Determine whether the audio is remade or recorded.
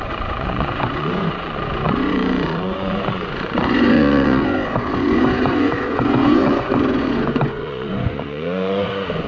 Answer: remade